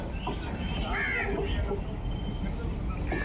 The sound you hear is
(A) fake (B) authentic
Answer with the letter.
B